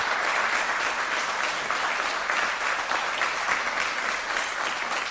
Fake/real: real